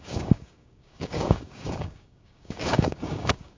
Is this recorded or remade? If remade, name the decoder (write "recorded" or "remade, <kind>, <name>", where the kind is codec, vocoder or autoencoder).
remade, codec, DAC